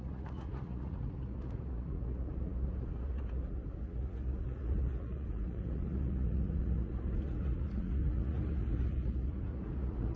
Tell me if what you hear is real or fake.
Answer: fake